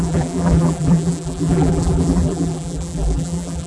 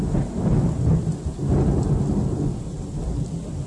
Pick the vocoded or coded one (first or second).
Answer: first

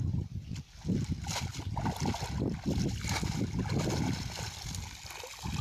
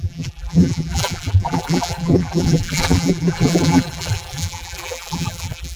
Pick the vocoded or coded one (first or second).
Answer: second